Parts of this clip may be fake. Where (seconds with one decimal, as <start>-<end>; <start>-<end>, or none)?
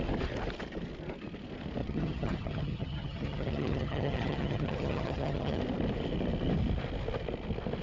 1.8-5.6